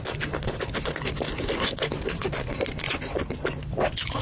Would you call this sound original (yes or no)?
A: yes